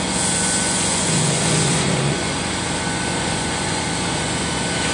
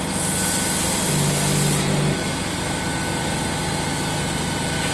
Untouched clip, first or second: second